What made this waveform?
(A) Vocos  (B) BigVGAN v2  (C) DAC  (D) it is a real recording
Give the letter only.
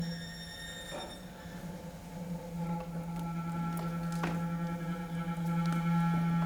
D